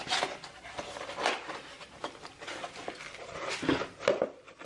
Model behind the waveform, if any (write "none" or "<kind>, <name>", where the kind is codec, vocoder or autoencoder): none